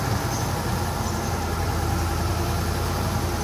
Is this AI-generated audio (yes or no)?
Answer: no